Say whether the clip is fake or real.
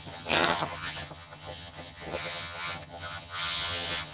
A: fake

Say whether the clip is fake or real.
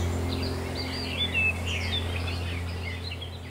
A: real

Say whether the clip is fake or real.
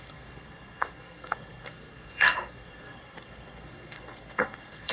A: fake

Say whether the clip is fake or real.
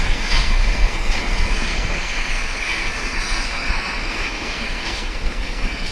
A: fake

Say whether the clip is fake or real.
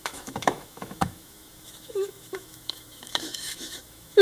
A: fake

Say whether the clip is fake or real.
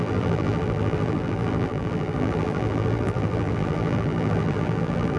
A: fake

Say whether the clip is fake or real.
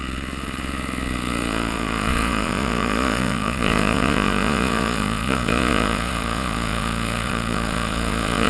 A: fake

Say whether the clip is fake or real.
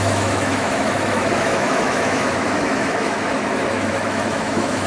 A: fake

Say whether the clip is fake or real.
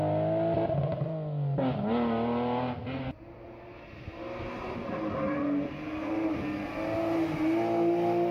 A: real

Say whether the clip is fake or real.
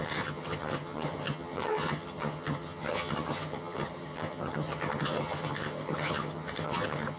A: fake